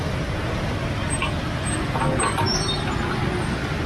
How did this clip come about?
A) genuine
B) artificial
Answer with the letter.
A